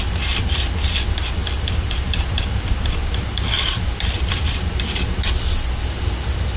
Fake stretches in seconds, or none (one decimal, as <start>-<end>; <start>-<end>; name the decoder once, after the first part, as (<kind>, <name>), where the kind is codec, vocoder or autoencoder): 1.4-5.1 (vocoder, BigVGAN v2)